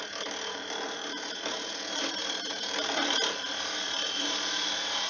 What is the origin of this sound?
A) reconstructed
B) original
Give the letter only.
A